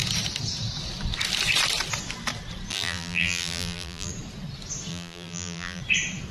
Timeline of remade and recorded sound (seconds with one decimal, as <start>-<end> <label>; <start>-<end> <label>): 0.0-2.7 recorded; 2.7-4.1 remade; 4.1-4.9 recorded; 4.9-5.8 remade; 5.8-6.3 recorded